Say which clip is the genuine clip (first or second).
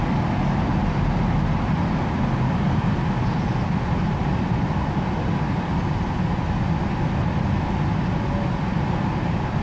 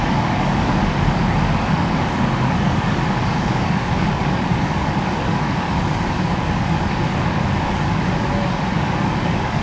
first